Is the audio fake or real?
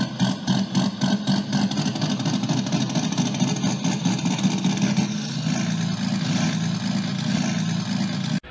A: real